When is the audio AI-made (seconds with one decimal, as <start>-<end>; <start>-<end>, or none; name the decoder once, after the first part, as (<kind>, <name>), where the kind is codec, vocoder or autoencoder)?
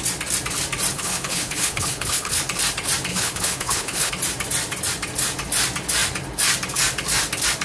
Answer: 0.9-2.4 (codec, HILCodec); 3.1-4.1